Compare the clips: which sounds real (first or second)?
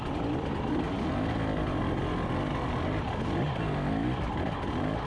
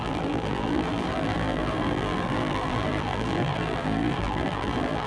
first